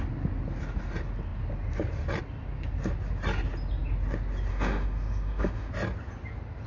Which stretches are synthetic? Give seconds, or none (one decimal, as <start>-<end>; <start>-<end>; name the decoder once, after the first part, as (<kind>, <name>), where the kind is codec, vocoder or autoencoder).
4.5-5.7 (autoencoder, DAC-VAE)